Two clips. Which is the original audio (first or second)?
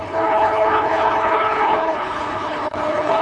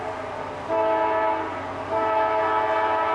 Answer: second